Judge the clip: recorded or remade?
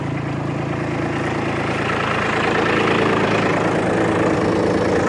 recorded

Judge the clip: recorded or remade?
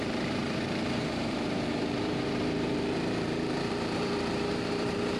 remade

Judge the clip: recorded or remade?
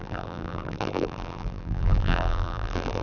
remade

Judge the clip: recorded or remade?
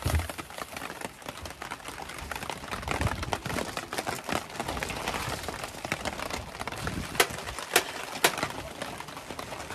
recorded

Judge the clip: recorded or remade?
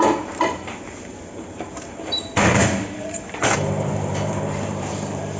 remade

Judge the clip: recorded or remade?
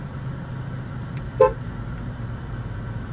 remade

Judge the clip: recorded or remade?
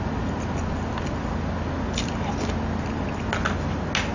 recorded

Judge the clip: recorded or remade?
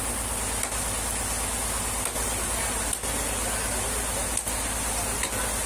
recorded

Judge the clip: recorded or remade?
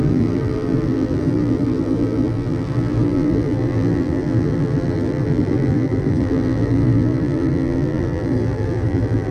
remade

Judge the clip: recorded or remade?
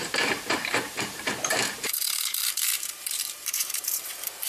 remade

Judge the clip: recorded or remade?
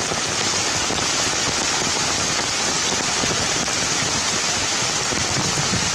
recorded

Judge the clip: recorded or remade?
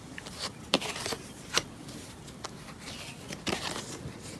remade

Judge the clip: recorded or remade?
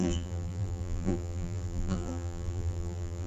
remade